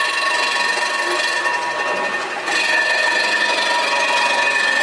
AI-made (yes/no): no